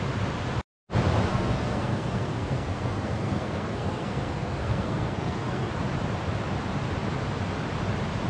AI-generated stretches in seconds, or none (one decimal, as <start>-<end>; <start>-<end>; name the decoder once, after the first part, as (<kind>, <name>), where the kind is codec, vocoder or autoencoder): 1.3-5.7 (codec, SNAC)